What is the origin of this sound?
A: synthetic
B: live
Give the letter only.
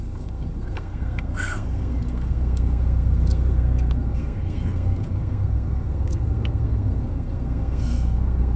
A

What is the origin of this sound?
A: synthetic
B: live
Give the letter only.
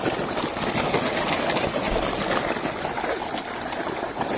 B